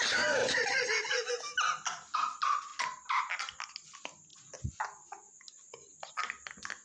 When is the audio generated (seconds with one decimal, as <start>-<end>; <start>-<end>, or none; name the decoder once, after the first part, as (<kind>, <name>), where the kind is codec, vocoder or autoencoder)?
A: 0.4-1.3 (vocoder, Vocos)